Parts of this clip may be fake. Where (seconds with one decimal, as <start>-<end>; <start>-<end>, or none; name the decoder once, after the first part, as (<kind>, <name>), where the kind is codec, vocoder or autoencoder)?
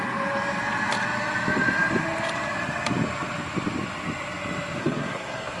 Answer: 4.8-5.6 (codec, SNAC)